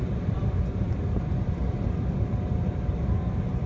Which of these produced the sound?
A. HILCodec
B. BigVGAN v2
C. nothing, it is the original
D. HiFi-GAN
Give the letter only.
B